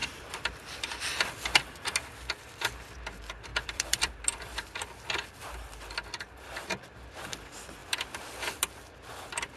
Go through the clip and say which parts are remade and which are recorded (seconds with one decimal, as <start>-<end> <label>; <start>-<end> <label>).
0.0-1.3 remade; 1.3-3.5 recorded; 3.5-4.7 remade; 4.7-9.6 recorded